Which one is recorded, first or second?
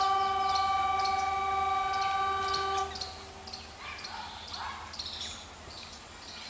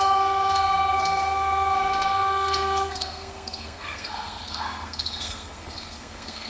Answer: first